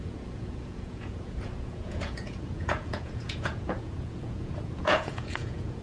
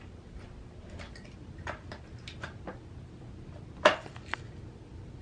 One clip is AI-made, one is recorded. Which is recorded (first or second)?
second